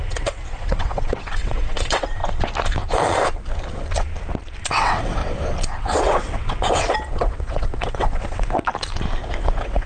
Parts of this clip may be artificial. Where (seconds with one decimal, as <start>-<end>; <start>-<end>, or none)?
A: 0.0-2.2; 4.7-5.2; 5.8-8.7; 9.3-9.9

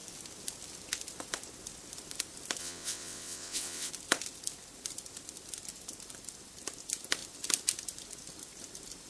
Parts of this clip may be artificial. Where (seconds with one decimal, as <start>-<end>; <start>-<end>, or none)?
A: 2.6-3.9

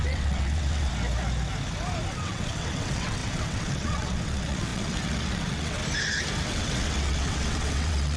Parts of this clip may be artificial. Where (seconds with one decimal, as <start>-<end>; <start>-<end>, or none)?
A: 0.0-0.9; 2.1-5.8; 6.4-8.2